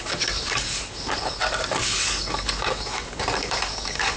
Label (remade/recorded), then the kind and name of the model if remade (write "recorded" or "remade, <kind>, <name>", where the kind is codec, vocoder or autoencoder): remade, codec, DAC